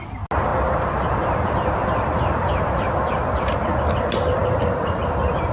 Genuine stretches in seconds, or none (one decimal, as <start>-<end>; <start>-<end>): 0.0-4.4; 5.1-5.5